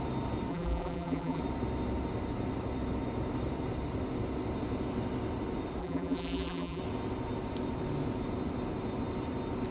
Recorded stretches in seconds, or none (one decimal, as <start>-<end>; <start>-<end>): 0.0-0.5; 1.4-5.8; 6.8-9.7